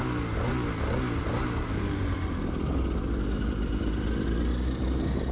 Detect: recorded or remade recorded